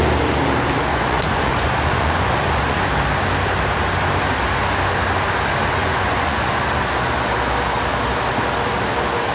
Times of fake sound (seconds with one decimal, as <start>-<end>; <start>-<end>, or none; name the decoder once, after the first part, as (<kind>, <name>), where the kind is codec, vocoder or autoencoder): 0.9-2.8 (vocoder, Vocos); 5.8-6.6